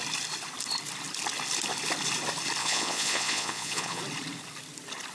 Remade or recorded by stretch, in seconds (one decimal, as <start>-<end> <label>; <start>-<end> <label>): 0.0-2.6 recorded; 2.6-4.0 remade; 4.0-5.1 recorded